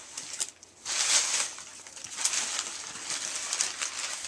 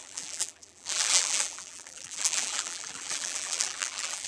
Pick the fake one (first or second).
second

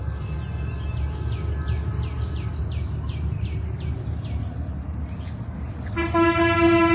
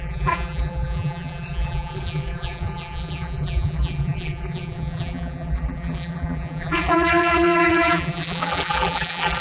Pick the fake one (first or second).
second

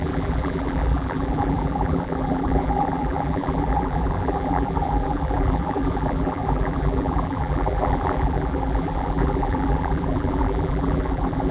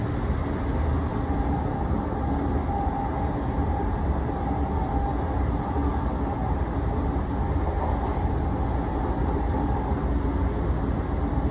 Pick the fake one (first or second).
first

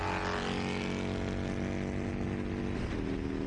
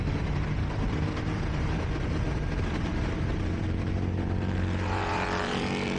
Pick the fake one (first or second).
second